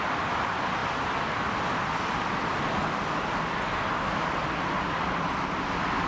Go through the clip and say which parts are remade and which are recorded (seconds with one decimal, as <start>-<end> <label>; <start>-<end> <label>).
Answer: 0.0-2.8 remade; 2.8-3.8 recorded; 3.8-6.1 remade

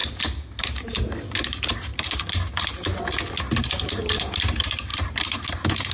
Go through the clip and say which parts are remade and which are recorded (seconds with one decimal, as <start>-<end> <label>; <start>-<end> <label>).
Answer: 0.0-0.6 recorded; 0.6-1.9 remade; 1.9-4.2 recorded; 4.2-5.9 remade

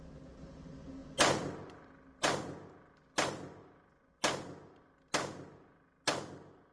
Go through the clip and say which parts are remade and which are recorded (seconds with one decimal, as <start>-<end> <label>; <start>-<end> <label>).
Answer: 0.0-6.7 recorded

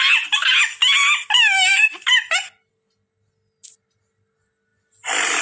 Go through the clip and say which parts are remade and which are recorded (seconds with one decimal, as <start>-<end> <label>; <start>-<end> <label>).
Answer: 0.0-1.7 recorded; 1.7-2.7 remade; 2.7-4.7 recorded; 4.7-5.4 remade

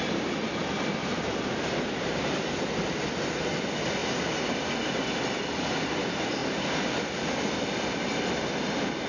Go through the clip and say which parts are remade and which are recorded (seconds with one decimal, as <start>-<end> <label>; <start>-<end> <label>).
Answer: 0.0-1.0 recorded; 1.0-2.3 remade; 2.3-4.0 recorded; 4.0-4.7 remade; 4.7-9.1 recorded